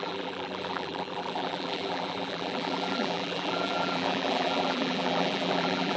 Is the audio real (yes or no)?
no